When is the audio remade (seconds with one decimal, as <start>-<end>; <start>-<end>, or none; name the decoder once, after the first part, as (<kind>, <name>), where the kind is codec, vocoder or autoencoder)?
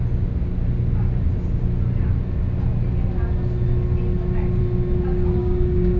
5.4-6.0 (codec, DAC)